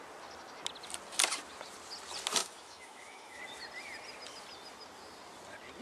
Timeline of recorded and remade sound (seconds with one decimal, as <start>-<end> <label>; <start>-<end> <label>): 0.0-2.4 recorded; 2.4-3.4 remade; 3.4-5.8 recorded